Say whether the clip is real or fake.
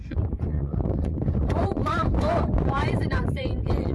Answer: fake